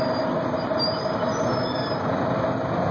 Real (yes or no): yes